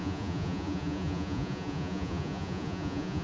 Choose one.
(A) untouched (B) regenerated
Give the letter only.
B